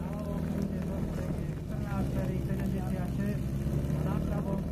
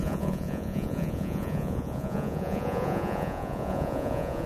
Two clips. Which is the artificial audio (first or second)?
second